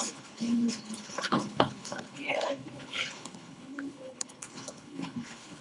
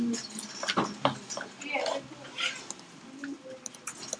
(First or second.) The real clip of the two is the second